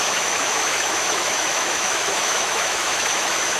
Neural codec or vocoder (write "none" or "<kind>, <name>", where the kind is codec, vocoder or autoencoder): autoencoder, DAC-VAE